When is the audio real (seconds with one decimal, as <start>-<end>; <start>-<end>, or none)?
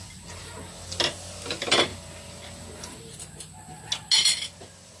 0.0-5.0